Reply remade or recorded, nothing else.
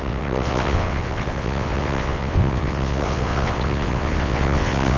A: remade